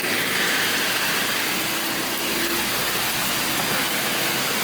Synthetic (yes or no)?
no